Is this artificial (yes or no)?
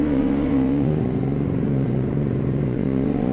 yes